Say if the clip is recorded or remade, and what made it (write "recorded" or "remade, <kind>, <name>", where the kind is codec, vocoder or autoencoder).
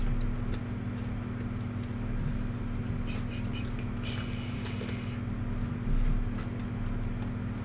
recorded